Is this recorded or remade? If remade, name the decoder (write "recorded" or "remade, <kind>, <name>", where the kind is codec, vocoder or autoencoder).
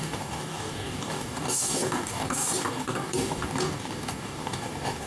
remade, codec, DAC